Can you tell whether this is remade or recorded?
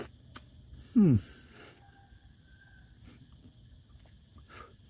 recorded